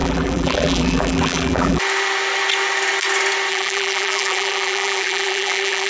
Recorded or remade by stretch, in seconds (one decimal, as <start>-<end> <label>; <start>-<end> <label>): 0.0-1.8 remade; 1.8-3.5 recorded; 3.5-5.9 remade